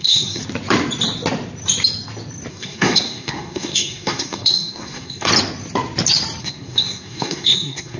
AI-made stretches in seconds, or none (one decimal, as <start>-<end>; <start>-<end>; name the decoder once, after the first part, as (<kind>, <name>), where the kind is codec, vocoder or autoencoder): 0.0-0.4 (codec, SNAC); 2.5-5.3; 6.4-8.0